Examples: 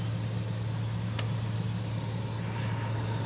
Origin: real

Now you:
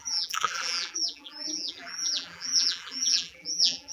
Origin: fake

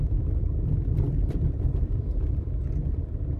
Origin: real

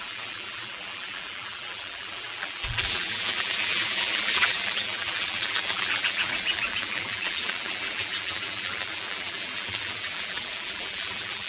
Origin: fake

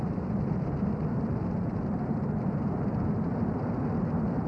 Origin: fake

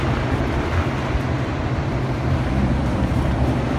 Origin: fake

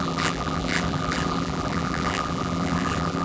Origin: fake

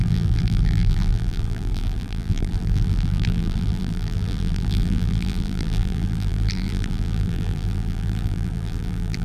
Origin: fake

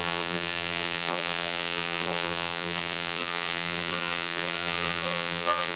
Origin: fake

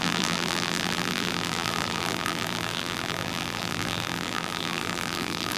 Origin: fake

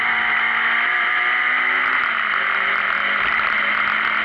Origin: real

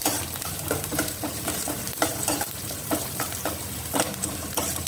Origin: fake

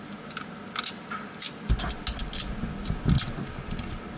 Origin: real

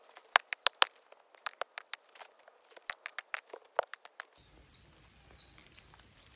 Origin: real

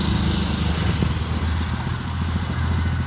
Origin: real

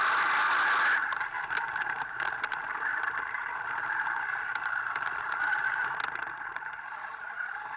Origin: real